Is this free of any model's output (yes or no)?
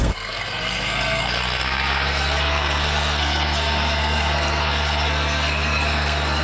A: no